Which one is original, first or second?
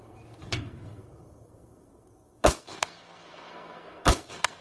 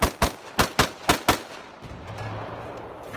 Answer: second